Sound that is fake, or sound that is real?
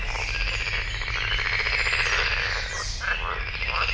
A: real